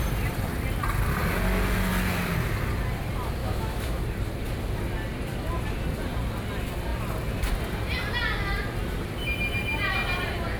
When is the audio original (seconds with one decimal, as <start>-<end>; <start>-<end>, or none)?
0.0-3.4; 4.0-10.6